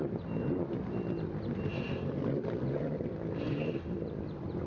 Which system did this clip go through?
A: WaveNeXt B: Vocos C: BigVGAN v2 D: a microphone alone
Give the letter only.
C